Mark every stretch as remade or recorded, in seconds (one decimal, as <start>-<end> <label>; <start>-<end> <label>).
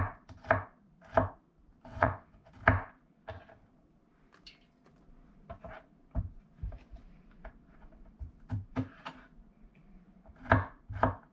0.0-1.9 recorded; 1.9-2.5 remade; 2.5-11.3 recorded